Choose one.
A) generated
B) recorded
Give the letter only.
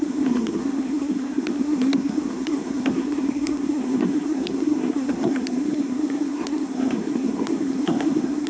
A